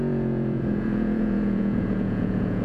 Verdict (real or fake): fake